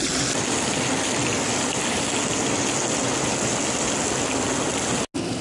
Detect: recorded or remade recorded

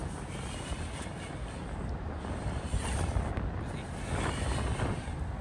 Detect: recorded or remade recorded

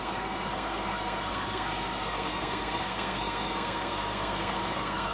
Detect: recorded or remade remade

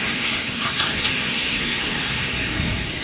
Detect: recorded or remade remade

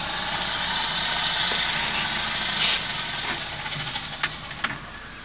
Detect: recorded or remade recorded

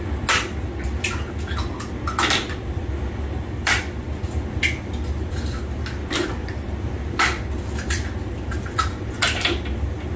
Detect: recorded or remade recorded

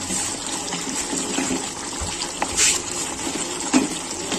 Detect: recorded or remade recorded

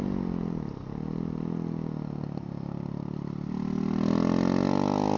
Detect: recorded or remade recorded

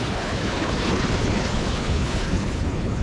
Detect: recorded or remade remade